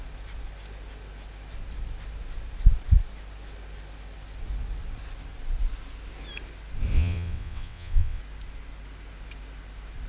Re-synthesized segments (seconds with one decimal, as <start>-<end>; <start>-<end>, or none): 6.9-8.2